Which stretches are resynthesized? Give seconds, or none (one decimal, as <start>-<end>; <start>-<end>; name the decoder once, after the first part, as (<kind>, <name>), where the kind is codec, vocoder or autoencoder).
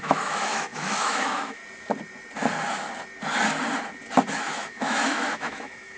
0.0-1.6 (autoencoder, DAC-VAE); 4.5-6.0